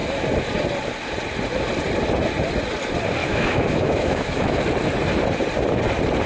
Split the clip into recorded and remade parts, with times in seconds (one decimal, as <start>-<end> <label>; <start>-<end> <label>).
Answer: 0.0-3.2 recorded; 3.2-4.6 remade; 4.6-6.3 recorded